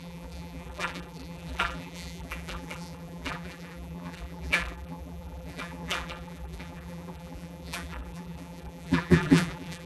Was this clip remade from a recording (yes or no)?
yes